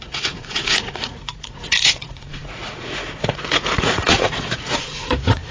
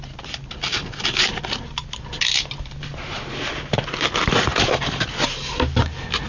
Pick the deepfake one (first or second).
first